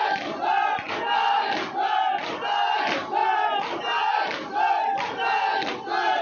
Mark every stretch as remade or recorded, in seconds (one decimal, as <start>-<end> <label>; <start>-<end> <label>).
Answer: 0.0-6.2 recorded